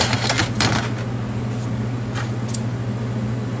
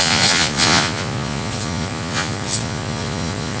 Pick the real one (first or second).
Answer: first